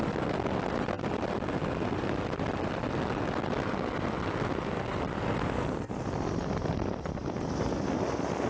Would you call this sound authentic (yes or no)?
yes